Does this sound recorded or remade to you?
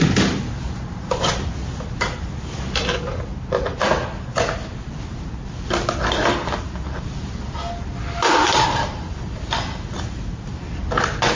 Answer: recorded